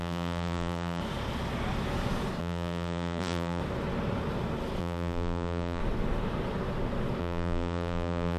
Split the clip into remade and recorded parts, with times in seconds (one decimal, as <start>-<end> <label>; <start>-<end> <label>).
0.0-1.0 remade; 1.0-2.4 recorded; 2.4-3.6 remade; 3.6-4.8 recorded; 4.8-5.8 remade; 5.8-7.2 recorded; 7.2-8.4 remade